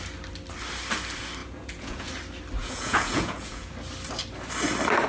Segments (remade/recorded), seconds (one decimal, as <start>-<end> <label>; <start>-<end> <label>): 0.0-1.4 recorded; 1.4-2.1 remade; 2.1-2.6 recorded; 2.6-3.7 remade; 3.7-5.1 recorded